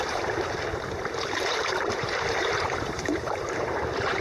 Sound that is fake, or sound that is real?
fake